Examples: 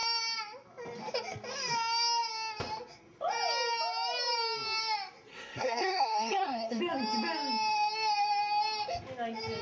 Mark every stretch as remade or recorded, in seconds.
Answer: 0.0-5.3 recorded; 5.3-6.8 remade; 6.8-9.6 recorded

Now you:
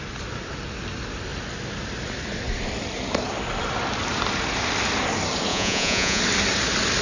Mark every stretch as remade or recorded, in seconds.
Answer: 0.0-5.5 recorded; 5.5-6.2 remade; 6.2-7.0 recorded

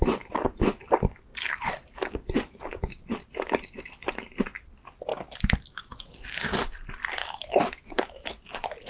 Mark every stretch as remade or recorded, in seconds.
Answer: 0.0-5.1 recorded; 5.1-6.5 remade; 6.5-7.2 recorded; 7.2-8.3 remade; 8.3-8.9 recorded